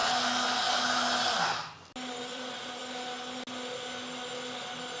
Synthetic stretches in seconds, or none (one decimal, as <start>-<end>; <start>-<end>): 2.2-2.8